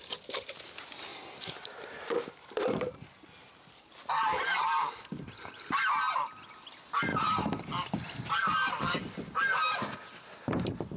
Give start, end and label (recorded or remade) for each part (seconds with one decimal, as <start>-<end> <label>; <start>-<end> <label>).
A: 0.0-7.1 recorded; 7.1-7.7 remade; 7.7-11.0 recorded